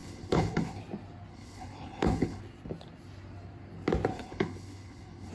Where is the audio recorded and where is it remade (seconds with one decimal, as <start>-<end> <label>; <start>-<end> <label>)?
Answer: 0.0-0.8 remade; 0.8-1.3 recorded; 1.3-2.4 remade; 2.4-4.1 recorded; 4.1-5.3 remade